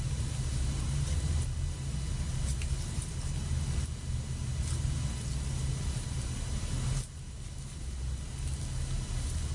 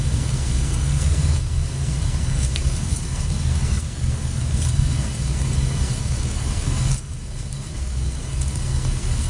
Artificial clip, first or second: second